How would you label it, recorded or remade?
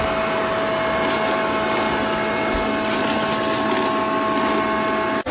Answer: recorded